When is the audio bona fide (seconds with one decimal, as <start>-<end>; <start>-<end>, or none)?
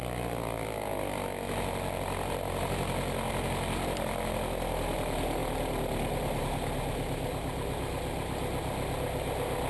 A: 0.0-9.7